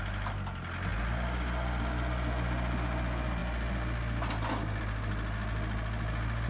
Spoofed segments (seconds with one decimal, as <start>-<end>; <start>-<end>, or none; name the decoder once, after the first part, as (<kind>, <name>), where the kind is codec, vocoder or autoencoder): none

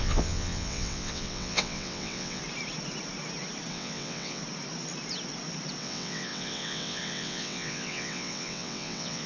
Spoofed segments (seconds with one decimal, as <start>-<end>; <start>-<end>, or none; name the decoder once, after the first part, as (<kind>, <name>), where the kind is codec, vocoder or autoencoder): 0.0-2.4 (vocoder, WaveNeXt); 3.7-4.4; 5.8-9.3

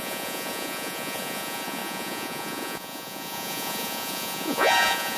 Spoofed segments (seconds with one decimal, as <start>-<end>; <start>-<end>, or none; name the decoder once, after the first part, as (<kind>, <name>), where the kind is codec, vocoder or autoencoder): 0.0-5.2 (vocoder, Vocos)

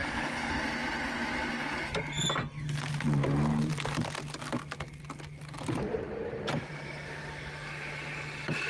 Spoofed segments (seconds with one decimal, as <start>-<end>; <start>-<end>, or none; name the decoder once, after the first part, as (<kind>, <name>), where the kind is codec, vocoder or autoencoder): 0.0-0.5 (codec, HILCodec)

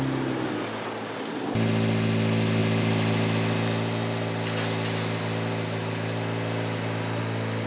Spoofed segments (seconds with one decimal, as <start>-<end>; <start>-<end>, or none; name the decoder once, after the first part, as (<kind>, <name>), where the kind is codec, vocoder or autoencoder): none

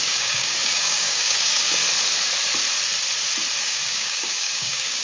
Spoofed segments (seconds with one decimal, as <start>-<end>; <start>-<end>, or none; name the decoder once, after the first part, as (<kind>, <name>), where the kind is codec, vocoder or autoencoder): 0.0-1.8 (codec, DAC); 3.6-5.0